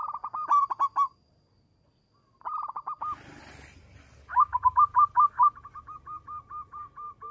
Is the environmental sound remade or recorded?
recorded